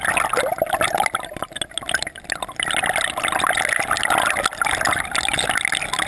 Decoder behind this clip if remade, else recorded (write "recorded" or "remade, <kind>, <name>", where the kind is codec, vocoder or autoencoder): recorded